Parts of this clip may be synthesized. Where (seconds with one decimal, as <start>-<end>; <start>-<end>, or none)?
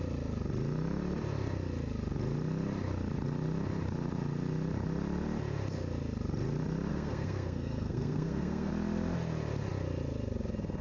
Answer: 6.9-8.7